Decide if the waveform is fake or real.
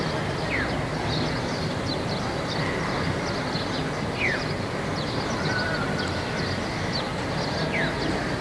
real